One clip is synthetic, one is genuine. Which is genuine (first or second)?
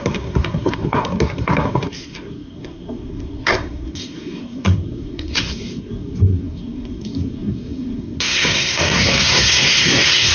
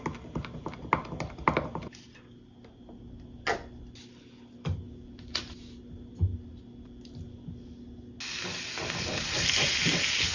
second